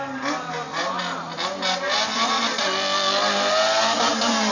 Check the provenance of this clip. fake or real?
real